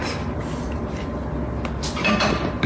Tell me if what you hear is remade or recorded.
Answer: recorded